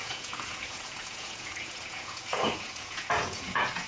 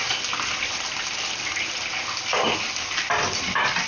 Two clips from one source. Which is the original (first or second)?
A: second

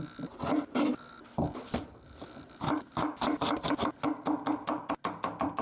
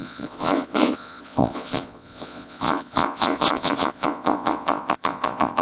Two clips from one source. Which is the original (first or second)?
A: first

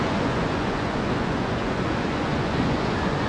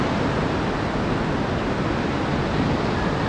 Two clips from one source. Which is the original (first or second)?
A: second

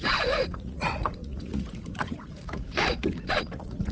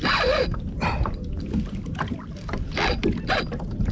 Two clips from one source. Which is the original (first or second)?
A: second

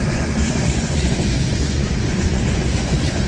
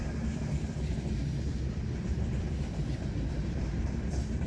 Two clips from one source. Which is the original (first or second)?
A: second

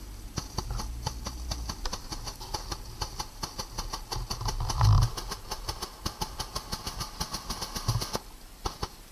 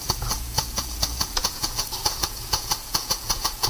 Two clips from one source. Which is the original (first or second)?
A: first